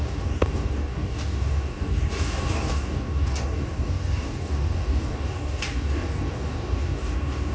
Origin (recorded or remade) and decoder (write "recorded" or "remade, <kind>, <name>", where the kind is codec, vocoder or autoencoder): remade, codec, DAC